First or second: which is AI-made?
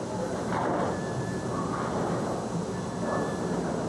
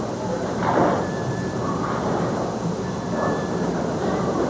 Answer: second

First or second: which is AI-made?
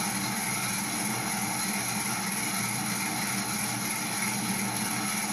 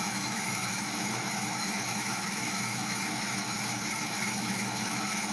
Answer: second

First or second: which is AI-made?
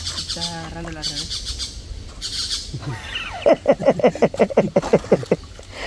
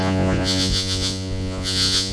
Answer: second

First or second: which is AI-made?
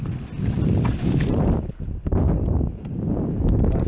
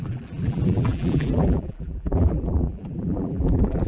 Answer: second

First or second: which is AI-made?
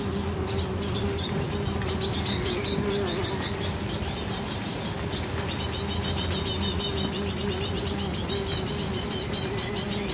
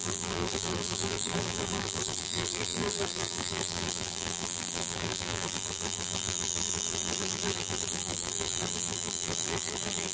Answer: second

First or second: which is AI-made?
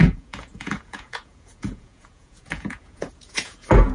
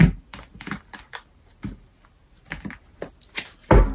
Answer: first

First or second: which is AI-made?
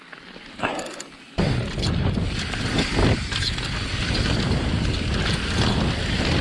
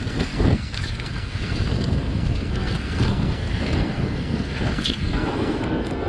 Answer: second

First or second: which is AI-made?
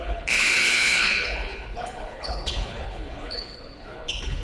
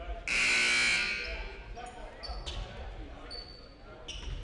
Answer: first